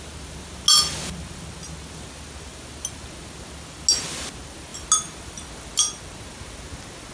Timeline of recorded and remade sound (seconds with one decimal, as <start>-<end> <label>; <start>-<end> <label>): 0.0-7.1 recorded